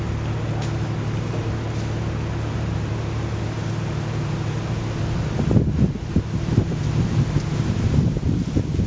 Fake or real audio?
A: real